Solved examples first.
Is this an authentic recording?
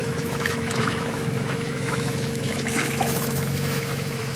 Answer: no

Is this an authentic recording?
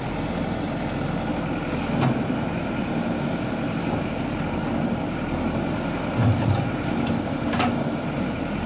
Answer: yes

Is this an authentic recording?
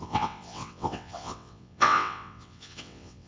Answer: no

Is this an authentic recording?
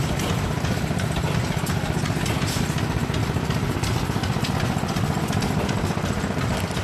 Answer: yes